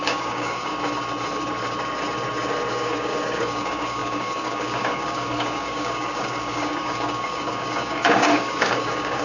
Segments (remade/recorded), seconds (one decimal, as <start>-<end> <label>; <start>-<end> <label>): 0.0-0.7 remade; 0.7-2.7 recorded; 2.7-9.2 remade